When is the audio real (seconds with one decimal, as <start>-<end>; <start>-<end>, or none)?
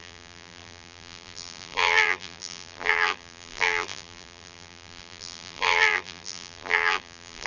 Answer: none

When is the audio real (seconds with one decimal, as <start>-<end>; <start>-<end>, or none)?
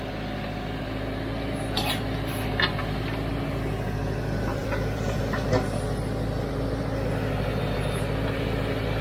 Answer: 0.0-4.6; 5.2-9.0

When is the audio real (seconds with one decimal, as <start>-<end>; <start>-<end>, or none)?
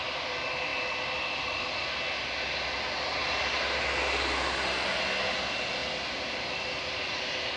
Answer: 0.0-5.8; 7.0-7.6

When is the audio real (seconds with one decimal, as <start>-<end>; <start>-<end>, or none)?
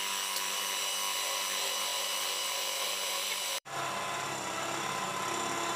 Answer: 5.1-5.8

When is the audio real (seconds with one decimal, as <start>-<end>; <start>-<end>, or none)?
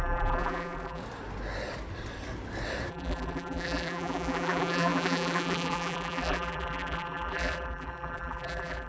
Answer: 1.0-2.9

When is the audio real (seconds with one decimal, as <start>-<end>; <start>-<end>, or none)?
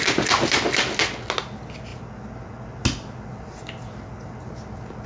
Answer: 0.0-5.1